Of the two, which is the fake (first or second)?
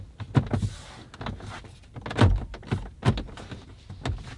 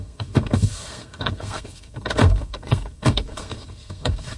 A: second